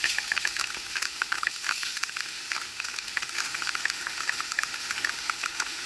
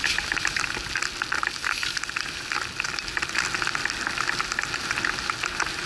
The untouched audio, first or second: second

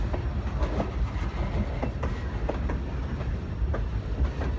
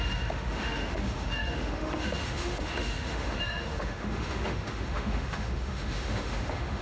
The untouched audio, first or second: first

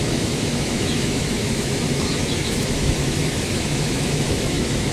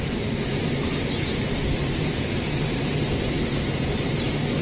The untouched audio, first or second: second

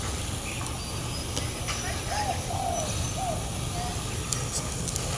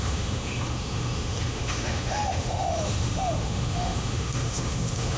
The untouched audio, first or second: first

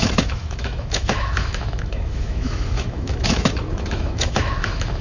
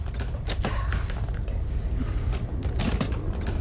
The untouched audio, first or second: second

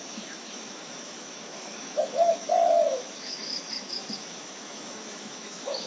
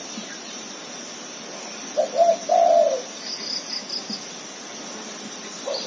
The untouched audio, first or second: second